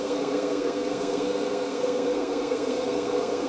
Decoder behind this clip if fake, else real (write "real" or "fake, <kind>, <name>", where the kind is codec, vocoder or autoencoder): fake, codec, SNAC